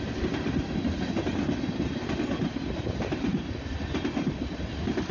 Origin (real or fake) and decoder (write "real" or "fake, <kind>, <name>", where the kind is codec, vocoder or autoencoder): fake, vocoder, BigVGAN v2